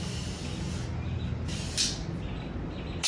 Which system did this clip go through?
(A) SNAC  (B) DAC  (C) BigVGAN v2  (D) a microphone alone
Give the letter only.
D